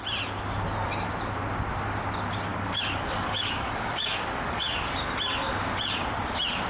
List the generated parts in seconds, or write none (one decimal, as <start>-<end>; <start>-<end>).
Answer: 2.5-4.9